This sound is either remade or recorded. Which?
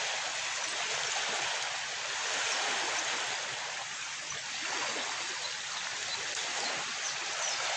recorded